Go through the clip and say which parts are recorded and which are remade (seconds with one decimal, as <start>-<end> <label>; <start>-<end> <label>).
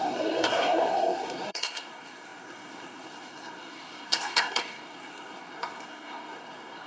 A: 0.0-6.9 remade